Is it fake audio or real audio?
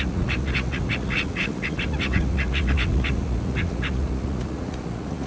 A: fake